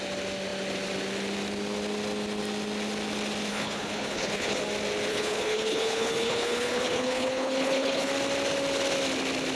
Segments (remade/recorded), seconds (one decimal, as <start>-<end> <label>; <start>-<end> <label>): 0.0-3.5 recorded; 3.5-4.6 remade; 4.6-5.1 recorded; 5.1-8.1 remade; 8.1-9.6 recorded